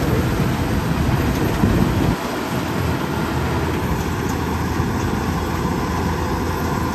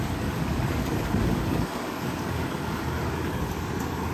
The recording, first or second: first